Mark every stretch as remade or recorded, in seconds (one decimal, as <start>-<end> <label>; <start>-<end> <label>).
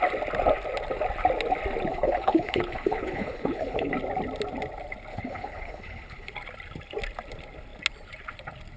0.0-1.9 recorded; 1.9-3.9 remade; 3.9-5.1 recorded; 5.1-6.3 remade; 6.3-8.8 recorded